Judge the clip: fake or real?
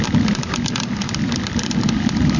real